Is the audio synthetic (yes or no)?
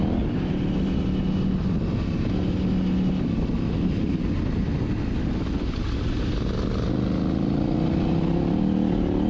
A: no